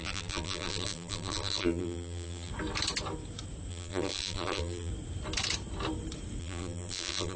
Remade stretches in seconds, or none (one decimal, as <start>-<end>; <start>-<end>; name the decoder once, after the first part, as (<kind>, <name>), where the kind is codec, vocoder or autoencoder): 0.0-2.5 (vocoder, BigVGAN v2); 3.7-4.9; 6.4-7.4